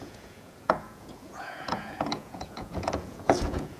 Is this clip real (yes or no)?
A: no